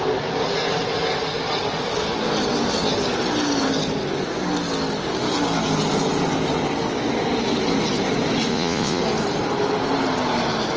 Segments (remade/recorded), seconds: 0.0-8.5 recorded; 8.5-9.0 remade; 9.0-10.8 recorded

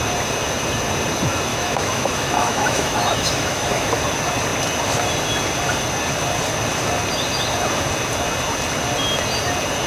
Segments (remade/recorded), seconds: 0.0-1.5 recorded; 1.5-4.0 remade; 4.0-9.9 recorded

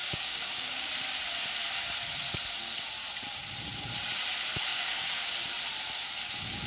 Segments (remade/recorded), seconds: 0.0-0.9 remade; 0.9-4.7 recorded; 4.7-5.3 remade; 5.3-6.7 recorded

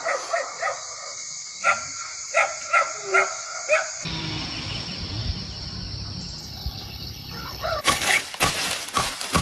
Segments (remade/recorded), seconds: 0.0-6.4 recorded; 6.4-8.2 remade; 8.2-9.4 recorded